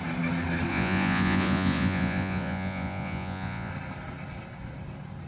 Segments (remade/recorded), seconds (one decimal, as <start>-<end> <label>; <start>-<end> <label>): 0.0-0.7 recorded; 0.7-3.7 remade; 3.7-5.3 recorded